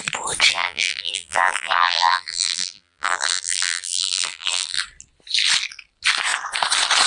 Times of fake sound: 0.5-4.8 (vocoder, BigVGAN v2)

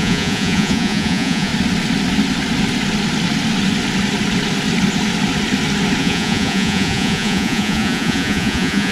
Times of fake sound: 0.0-1.5 (vocoder, Vocos); 6.0-8.9

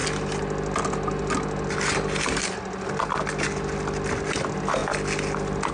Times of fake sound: none

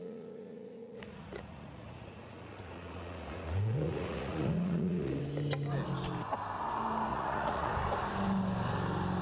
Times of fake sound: 0.0-5.2 (vocoder, Vocos); 7.1-7.7

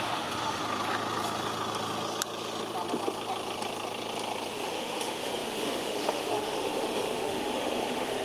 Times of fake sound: 0.0-0.6 (autoencoder, DAC-VAE); 4.5-8.2

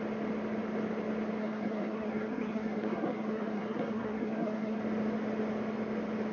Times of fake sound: 1.4-4.8 (codec, SNAC)

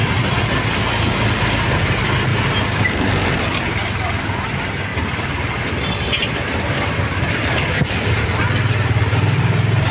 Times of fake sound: 2.3-3.6 (vocoder, BigVGAN v2); 4.9-9.4

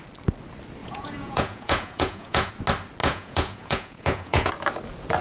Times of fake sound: 0.8-2.5 (vocoder, Vocos); 3.0-4.5